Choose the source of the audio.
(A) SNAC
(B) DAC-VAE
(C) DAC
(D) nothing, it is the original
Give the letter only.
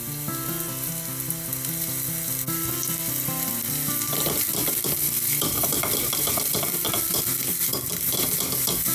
D